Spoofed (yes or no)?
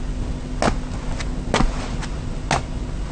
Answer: no